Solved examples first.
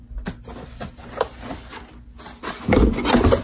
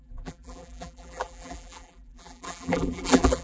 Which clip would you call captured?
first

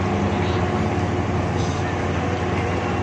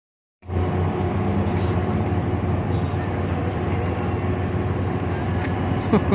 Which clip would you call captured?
first